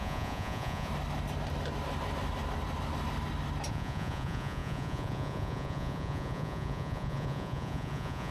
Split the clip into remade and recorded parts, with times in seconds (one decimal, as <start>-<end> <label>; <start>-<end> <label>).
0.0-0.9 remade; 0.9-3.7 recorded; 3.7-8.3 remade